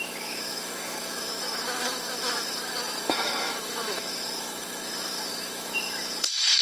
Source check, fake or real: fake